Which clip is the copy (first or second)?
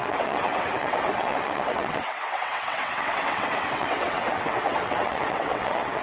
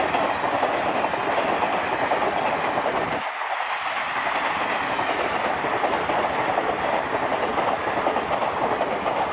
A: first